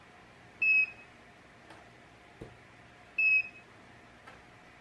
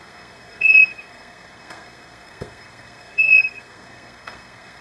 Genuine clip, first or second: first